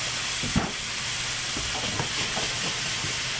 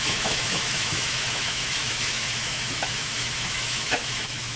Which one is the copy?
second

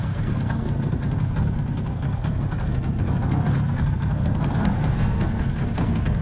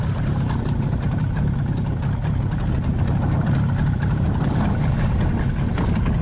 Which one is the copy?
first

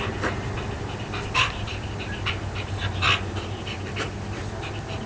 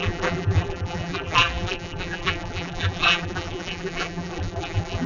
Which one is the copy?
second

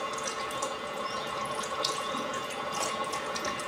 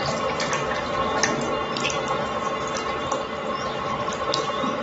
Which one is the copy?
first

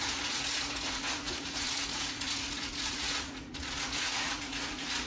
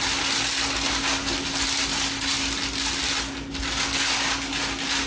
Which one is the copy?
first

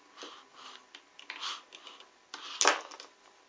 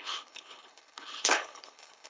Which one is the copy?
second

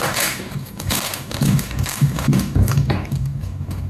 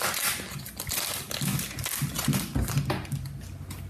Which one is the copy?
first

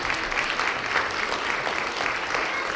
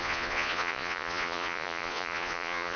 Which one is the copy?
second